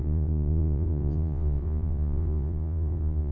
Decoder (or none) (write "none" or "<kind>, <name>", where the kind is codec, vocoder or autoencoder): vocoder, Vocos